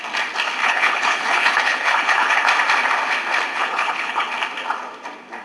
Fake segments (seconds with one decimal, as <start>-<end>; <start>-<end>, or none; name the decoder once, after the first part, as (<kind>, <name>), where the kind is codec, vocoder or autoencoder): 0.6-2.4 (codec, HILCodec); 3.5-4.3